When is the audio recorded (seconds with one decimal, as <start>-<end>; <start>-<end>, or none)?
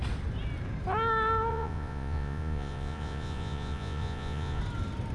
0.0-1.5; 4.6-5.1